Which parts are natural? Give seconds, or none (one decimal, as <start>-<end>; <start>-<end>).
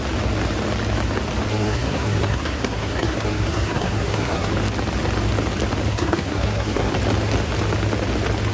0.0-1.5; 4.5-5.9; 6.9-8.5